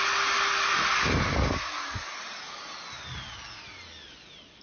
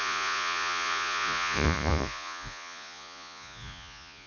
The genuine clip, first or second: first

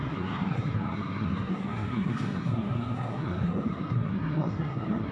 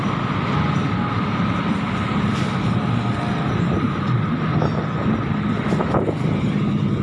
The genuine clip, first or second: second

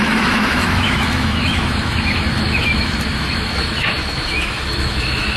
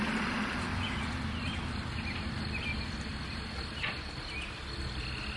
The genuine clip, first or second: second